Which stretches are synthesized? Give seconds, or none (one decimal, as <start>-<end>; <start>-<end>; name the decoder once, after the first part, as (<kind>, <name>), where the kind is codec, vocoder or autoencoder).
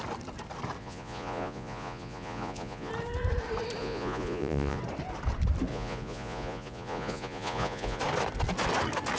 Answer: 0.8-2.9 (vocoder, Vocos); 3.8-4.8; 5.7-8.0